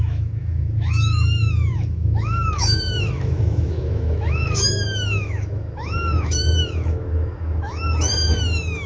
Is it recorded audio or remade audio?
remade